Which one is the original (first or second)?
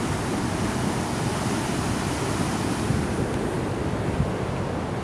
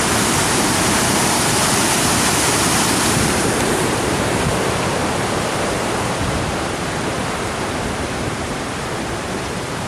first